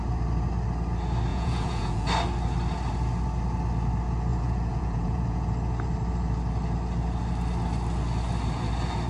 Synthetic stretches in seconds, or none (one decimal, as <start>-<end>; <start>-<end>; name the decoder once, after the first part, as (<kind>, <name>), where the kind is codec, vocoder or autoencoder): 1.3-2.1 (vocoder, Vocos); 4.3-5.4